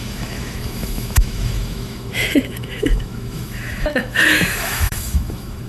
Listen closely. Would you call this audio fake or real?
fake